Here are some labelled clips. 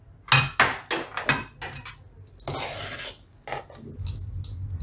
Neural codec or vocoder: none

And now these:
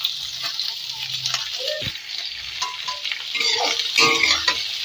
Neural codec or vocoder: none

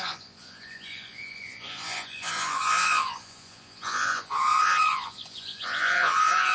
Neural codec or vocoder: vocoder, Vocos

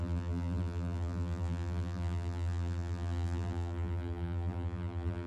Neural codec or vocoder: vocoder, BigVGAN v2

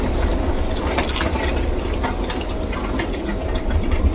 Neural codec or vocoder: none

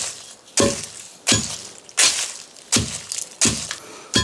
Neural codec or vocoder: none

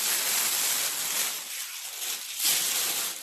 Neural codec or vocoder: none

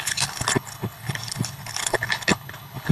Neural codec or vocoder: codec, HILCodec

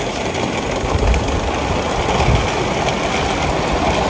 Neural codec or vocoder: none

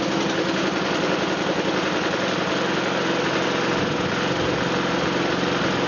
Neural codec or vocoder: none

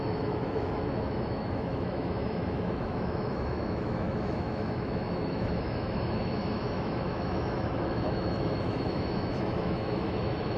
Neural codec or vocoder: autoencoder, DAC-VAE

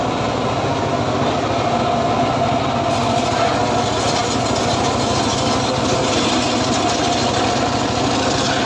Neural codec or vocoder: none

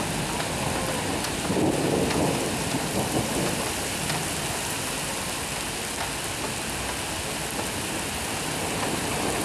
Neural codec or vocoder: none